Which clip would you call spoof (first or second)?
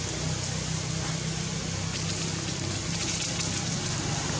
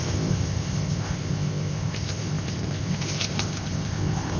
second